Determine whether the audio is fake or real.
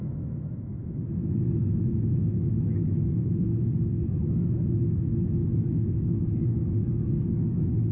fake